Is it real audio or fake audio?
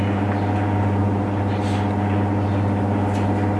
real